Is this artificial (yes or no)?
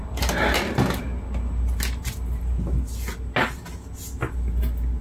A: no